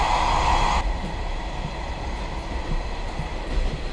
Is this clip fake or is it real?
real